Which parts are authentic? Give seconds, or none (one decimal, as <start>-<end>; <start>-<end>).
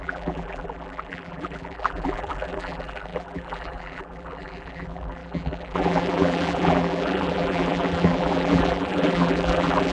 none